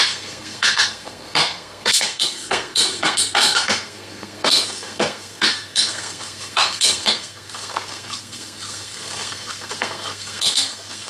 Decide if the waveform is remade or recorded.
remade